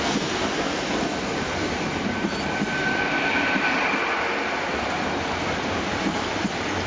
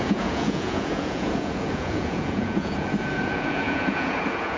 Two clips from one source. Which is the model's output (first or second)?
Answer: second